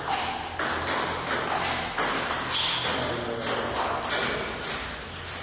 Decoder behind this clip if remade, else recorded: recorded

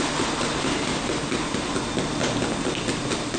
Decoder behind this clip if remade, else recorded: recorded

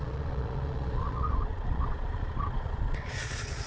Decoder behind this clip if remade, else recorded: remade, vocoder, Vocos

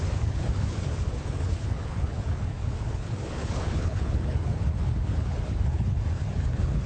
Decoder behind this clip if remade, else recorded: remade, codec, HILCodec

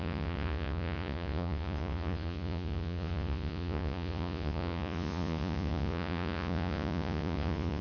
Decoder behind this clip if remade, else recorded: remade, vocoder, Vocos